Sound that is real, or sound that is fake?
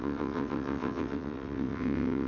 fake